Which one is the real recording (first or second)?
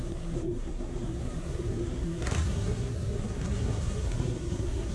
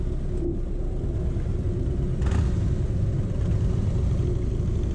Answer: second